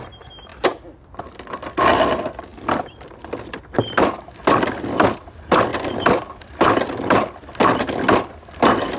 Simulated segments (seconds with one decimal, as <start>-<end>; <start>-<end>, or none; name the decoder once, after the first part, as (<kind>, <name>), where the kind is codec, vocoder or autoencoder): none